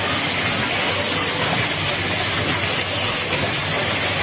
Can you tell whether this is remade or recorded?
recorded